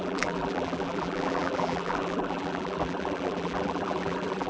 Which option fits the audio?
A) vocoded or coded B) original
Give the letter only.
A